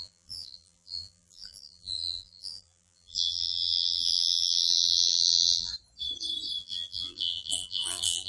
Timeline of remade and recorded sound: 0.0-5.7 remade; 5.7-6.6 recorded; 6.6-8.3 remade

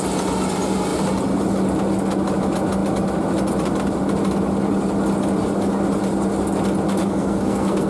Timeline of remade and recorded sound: 0.0-7.0 recorded; 7.0-7.9 remade

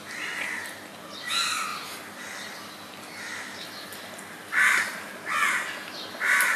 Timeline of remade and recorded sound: 0.0-6.6 recorded

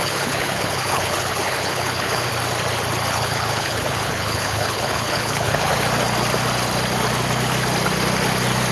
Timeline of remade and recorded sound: 0.0-2.3 remade; 2.3-3.1 recorded; 3.1-5.7 remade; 5.7-8.7 recorded